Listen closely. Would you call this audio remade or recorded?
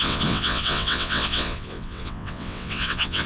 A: remade